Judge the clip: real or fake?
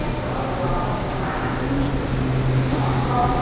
real